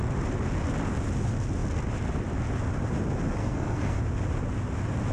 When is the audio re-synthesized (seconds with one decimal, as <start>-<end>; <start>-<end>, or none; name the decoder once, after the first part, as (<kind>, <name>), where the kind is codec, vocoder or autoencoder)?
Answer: 3.4-4.0 (codec, SNAC)